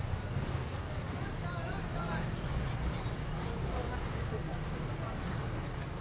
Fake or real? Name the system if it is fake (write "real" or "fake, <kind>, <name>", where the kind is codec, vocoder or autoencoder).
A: real